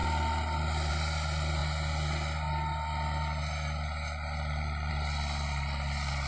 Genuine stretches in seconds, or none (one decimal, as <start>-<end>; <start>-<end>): 0.0-0.9; 1.6-4.9